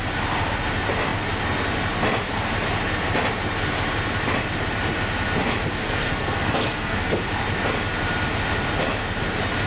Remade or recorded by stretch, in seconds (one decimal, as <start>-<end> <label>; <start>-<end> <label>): 0.0-5.8 recorded; 5.8-7.1 remade; 7.1-9.7 recorded